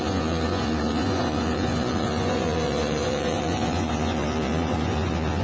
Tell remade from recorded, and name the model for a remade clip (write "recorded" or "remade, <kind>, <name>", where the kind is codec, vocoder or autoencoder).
remade, vocoder, Vocos